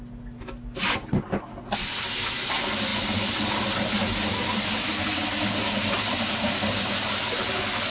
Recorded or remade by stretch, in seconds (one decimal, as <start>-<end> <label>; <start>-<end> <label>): 0.0-7.9 recorded